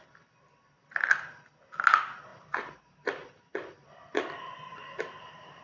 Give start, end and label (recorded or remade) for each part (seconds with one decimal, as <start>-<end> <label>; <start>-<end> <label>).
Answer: 0.0-2.3 recorded; 2.3-5.6 remade